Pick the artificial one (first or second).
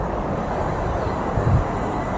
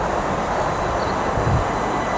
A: first